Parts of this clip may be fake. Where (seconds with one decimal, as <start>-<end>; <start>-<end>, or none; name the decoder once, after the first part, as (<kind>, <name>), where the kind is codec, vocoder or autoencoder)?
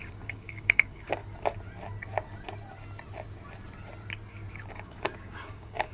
0.0-1.2 (codec, DAC); 4.7-5.9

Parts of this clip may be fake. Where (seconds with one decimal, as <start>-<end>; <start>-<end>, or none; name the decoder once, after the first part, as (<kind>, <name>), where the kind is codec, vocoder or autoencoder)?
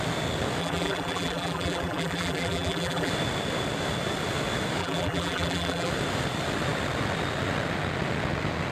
0.6-3.1 (vocoder, BigVGAN v2); 4.8-5.9